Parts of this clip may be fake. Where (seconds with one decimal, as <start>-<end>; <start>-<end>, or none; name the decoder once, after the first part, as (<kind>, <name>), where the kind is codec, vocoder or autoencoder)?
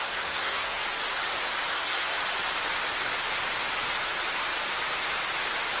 0.0-0.8 (codec, SNAC); 1.7-2.2